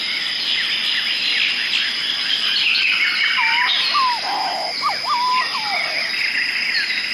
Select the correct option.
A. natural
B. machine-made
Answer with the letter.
A